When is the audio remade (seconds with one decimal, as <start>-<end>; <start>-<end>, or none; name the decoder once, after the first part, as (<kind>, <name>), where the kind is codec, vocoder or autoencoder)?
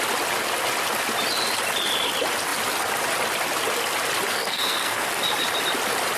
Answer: 4.3-5.1 (codec, SNAC)